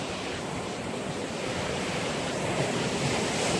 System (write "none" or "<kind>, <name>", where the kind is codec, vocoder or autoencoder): none